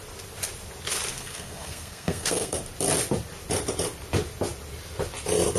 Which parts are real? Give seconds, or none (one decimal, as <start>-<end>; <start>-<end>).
0.0-1.1; 2.6-5.6